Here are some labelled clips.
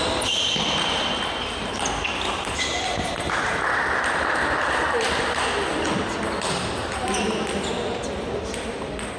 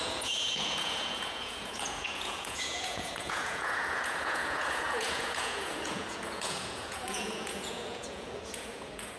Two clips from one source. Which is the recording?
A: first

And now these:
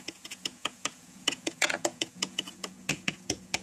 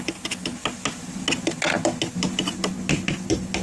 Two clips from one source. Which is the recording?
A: second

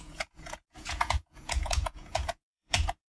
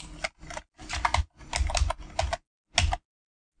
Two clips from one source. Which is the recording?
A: second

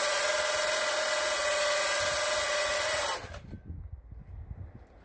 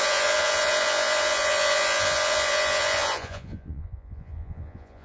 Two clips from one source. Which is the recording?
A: first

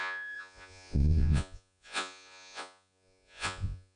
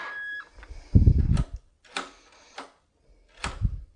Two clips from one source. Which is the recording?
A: second